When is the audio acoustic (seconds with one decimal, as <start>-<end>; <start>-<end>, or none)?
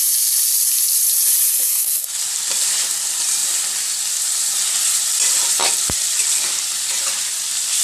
0.0-1.7; 2.2-7.8